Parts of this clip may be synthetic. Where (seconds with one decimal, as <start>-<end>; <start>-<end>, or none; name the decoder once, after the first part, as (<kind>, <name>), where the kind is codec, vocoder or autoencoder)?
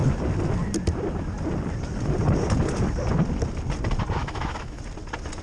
4.2-4.8 (autoencoder, DAC-VAE)